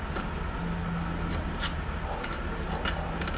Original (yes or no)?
yes